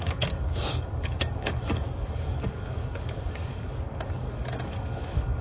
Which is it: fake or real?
fake